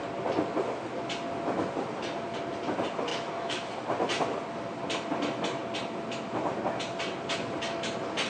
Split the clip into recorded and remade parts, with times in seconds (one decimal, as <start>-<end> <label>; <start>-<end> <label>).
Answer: 0.0-3.1 recorded; 3.1-3.7 remade; 3.7-8.3 recorded